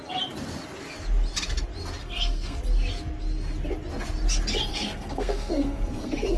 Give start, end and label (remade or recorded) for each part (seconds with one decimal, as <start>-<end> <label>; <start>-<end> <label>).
0.0-2.0 recorded; 2.0-2.6 remade; 2.6-4.7 recorded; 4.7-6.4 remade